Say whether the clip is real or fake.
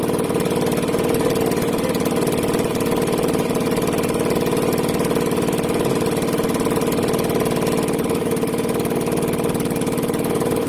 real